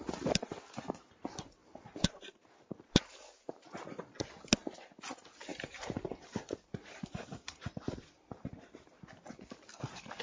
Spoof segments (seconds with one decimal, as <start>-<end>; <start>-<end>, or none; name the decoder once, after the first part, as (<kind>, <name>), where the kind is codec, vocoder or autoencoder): 1.6-3.0 (vocoder, BigVGAN v2); 5.5-8.8